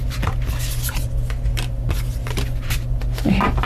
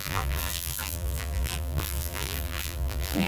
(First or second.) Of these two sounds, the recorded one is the first